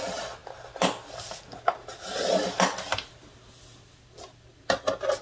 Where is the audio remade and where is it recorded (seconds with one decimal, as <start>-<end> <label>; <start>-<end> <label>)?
0.0-5.2 recorded